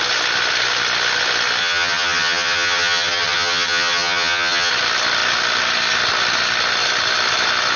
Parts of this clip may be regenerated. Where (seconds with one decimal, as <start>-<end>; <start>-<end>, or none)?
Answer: 1.6-4.7